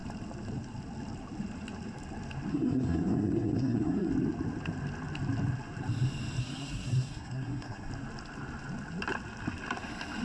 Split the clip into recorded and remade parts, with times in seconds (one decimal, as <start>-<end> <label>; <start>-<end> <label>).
0.0-2.5 recorded; 2.5-4.1 remade; 4.1-6.4 recorded; 6.4-7.9 remade; 7.9-10.2 recorded